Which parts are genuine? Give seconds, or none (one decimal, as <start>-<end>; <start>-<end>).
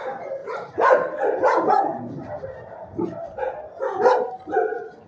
0.0-0.4; 3.5-5.1